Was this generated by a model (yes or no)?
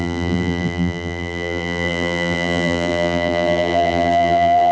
yes